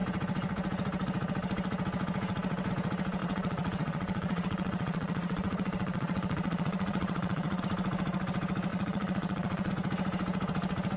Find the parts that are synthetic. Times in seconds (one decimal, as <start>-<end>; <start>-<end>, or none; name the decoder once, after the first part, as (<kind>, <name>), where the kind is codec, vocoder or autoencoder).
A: 3.2-7.6 (vocoder, Vocos); 8.7-9.7